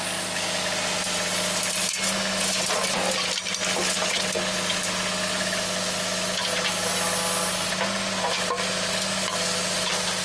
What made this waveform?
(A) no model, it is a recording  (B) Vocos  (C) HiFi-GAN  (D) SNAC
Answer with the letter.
A